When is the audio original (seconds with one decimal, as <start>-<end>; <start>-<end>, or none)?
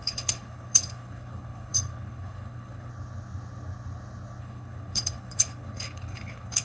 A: 2.9-4.4